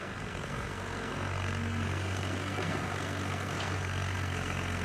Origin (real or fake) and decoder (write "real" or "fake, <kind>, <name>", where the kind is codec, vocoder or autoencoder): fake, codec, SNAC